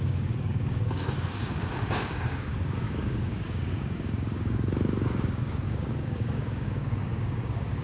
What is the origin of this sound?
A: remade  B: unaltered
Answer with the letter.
A